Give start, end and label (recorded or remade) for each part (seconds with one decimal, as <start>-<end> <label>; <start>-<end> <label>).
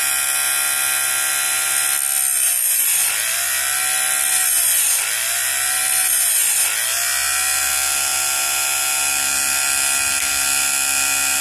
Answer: 0.0-11.4 recorded